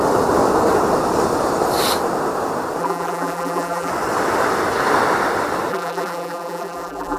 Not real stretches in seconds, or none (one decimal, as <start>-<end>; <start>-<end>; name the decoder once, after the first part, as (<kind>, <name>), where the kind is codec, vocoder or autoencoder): 2.8-3.9 (vocoder, BigVGAN v2); 5.7-7.2